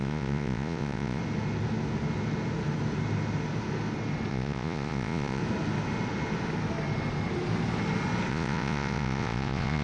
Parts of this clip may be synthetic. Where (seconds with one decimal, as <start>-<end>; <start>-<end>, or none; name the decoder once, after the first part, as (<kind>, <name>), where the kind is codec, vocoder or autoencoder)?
0.0-1.2 (vocoder, Vocos); 4.3-5.4; 8.3-9.8